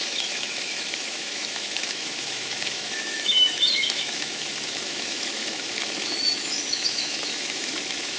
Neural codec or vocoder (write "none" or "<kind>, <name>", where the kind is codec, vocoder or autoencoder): autoencoder, DAC-VAE